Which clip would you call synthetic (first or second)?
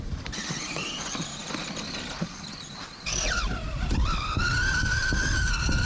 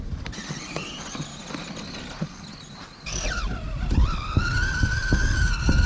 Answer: first